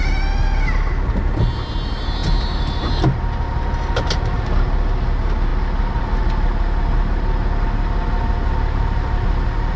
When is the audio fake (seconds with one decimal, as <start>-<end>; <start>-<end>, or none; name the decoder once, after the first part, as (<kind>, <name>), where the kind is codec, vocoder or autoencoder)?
none

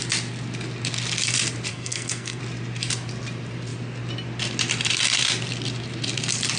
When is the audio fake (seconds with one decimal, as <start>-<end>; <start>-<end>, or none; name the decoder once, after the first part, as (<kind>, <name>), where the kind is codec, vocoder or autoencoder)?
1.7-2.4 (codec, SNAC)

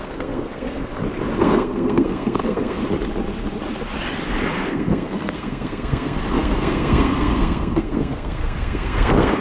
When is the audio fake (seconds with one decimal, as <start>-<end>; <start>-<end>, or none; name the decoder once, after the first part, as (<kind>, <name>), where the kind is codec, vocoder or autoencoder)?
0.0-0.9 (codec, SNAC); 1.4-2.8; 4.5-9.4

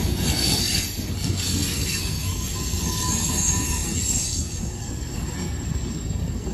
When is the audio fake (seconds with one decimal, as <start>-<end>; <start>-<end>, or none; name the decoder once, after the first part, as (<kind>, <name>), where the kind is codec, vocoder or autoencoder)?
0.0-6.5 (codec, SNAC)

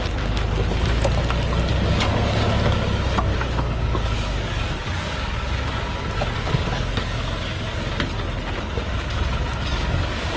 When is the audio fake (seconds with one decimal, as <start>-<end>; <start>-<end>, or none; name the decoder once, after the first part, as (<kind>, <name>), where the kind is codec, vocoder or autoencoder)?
1.7-2.4 (codec, DAC); 3.3-7.9; 9.7-10.4

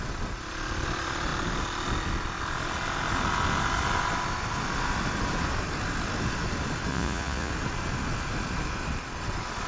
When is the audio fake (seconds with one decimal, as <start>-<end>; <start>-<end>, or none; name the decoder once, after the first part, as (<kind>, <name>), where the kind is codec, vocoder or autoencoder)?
6.9-7.5 (vocoder, Vocos)

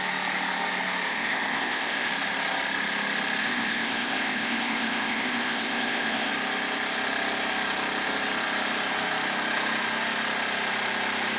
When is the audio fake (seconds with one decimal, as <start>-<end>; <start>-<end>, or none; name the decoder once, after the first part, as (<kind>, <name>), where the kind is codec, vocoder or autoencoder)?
1.1-2.1 (codec, ZipCodec); 3.4-6.3